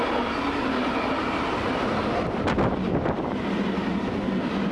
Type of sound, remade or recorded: recorded